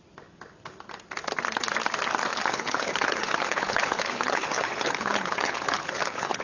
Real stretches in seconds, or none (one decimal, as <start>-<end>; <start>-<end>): 0.0-2.3